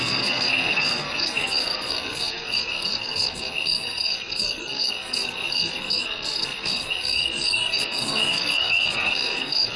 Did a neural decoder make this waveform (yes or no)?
yes